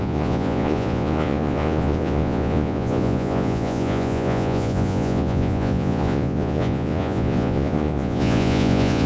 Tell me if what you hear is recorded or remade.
remade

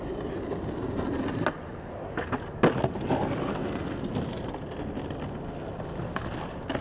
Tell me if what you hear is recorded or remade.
recorded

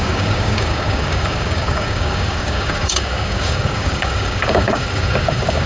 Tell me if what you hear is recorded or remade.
remade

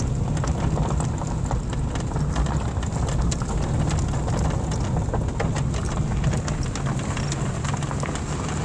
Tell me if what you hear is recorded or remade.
recorded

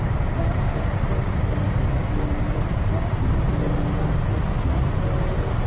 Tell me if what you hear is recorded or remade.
recorded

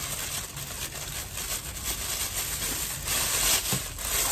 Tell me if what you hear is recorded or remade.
recorded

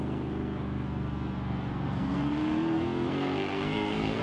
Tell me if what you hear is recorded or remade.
remade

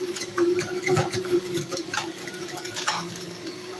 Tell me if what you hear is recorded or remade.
remade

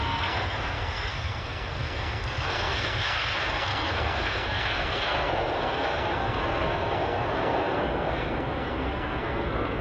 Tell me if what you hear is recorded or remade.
remade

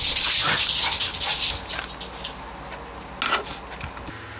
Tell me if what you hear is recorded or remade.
recorded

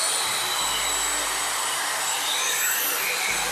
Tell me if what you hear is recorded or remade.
recorded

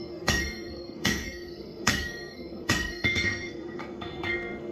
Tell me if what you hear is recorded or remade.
remade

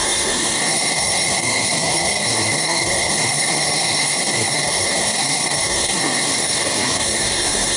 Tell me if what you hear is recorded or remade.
remade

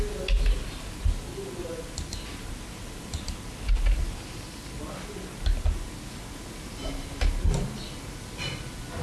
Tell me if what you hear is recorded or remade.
recorded